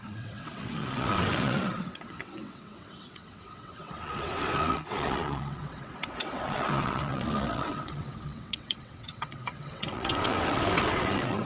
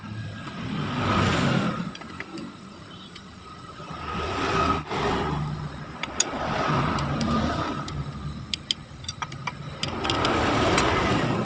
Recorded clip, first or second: second